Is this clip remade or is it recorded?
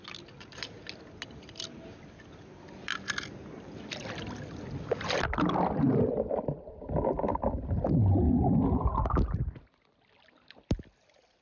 recorded